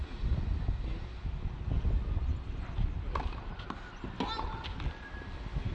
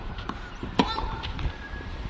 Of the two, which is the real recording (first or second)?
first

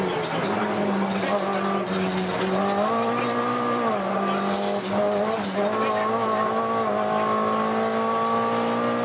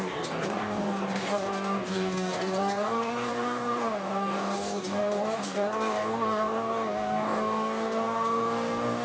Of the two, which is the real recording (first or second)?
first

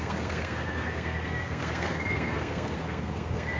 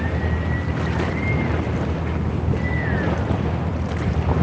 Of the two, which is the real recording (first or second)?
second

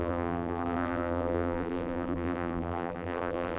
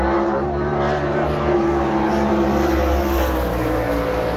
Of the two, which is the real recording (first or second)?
second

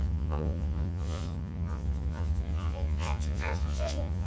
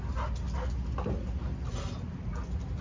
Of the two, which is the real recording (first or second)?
second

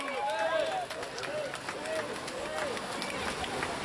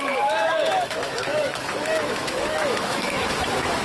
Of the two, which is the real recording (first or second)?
first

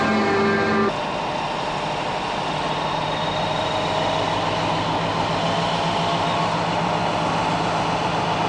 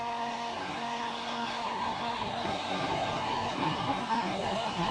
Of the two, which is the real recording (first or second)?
first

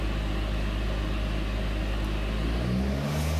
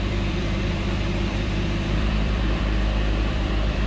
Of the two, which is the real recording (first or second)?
first